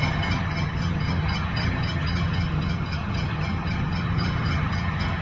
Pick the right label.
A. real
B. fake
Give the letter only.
B